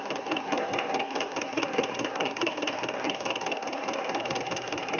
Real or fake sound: fake